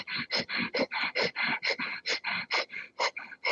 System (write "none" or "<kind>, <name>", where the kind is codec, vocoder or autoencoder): none